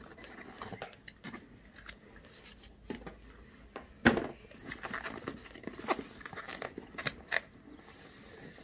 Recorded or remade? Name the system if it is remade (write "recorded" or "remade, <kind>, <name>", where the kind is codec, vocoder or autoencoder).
recorded